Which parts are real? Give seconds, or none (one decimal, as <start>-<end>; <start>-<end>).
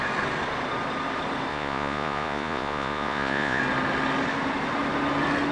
0.0-1.5; 3.6-5.5